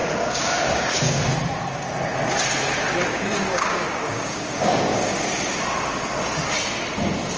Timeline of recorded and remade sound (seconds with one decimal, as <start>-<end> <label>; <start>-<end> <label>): 0.0-1.2 remade; 1.2-3.1 recorded; 3.1-5.2 remade; 5.2-7.4 recorded